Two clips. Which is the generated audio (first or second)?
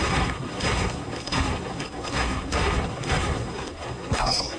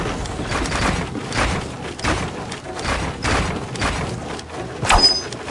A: first